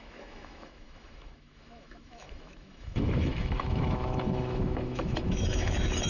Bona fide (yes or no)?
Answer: no